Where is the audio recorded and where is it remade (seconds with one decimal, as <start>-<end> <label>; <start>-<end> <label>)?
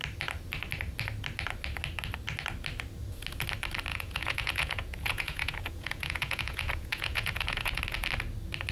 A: 0.0-3.9 recorded; 3.9-7.8 remade; 7.8-8.7 recorded